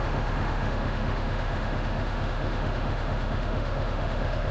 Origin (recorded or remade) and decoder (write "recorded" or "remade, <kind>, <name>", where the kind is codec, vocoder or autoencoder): remade, autoencoder, DAC-VAE